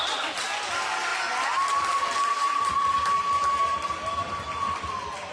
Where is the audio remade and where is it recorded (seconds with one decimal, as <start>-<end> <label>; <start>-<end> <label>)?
0.0-5.3 recorded